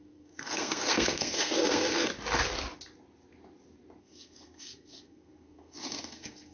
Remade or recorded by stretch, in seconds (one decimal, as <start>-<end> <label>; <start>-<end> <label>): 0.0-2.1 remade; 2.1-4.0 recorded; 4.0-6.5 remade